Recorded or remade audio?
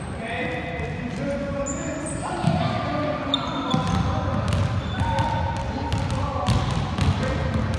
recorded